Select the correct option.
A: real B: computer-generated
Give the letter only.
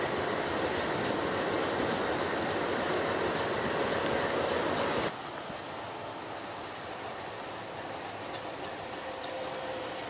B